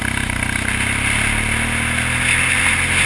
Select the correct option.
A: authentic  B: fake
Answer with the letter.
A